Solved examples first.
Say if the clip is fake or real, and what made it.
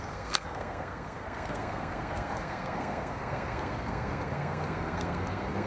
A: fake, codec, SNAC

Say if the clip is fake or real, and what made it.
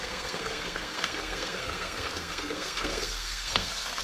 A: fake, codec, SNAC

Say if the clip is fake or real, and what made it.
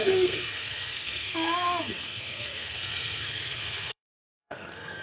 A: fake, codec, SNAC